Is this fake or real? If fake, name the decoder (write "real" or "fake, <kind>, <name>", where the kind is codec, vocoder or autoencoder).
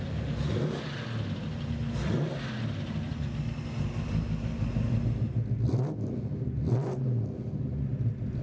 real